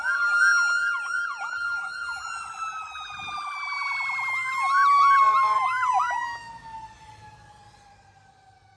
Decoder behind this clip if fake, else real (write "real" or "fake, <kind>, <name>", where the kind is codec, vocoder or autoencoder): real